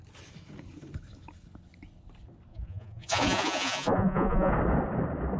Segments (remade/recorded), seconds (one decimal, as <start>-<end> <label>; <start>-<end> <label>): 0.0-2.5 recorded; 2.5-4.5 remade; 4.5-5.4 recorded